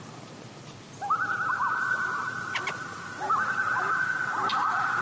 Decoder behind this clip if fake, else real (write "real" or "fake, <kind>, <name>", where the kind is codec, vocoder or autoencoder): real